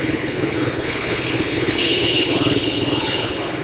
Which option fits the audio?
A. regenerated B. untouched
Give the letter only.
A